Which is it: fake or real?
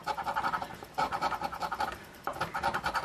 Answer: real